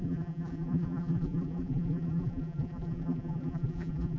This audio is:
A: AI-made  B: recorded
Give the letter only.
A